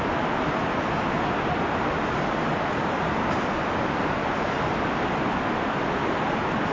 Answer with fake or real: real